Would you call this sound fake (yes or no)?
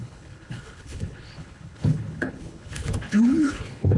yes